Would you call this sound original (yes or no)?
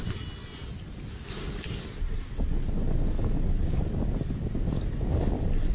yes